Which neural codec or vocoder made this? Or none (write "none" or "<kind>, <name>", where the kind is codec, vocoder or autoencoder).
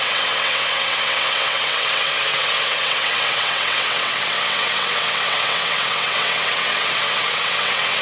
vocoder, WaveNeXt